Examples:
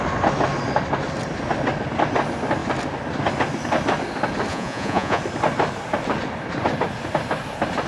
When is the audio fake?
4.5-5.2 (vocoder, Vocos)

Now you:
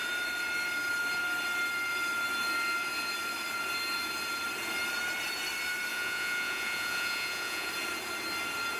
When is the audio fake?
5.9-7.7 (vocoder, Vocos)

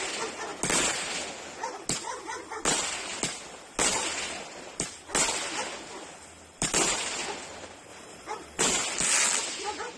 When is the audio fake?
none

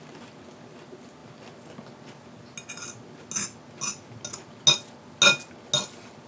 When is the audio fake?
none

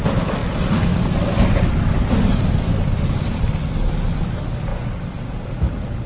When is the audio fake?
none

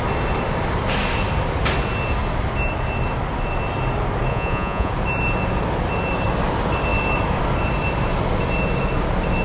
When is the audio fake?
4.3-4.9 (vocoder, Vocos)

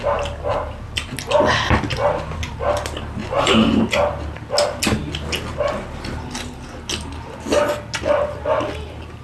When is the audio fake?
3.2-3.8 (vocoder, Vocos)